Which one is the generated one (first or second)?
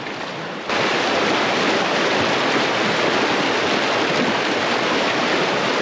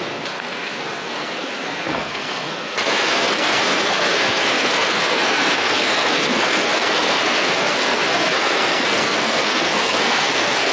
second